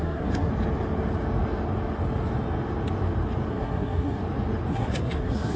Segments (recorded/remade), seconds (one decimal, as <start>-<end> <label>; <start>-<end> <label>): 0.0-0.5 remade; 0.5-3.5 recorded; 3.5-4.2 remade; 4.2-4.7 recorded; 4.7-5.6 remade